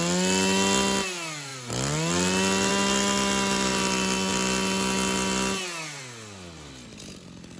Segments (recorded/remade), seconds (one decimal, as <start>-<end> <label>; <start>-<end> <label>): 0.0-7.6 recorded